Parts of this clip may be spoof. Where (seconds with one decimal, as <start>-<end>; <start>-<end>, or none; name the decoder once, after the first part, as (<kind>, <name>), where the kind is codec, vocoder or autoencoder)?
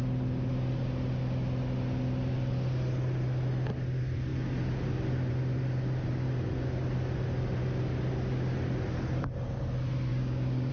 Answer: 10.1-10.7 (codec, DAC)